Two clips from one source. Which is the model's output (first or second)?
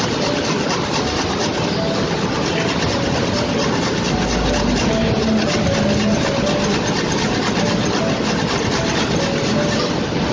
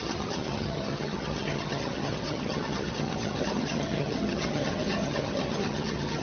second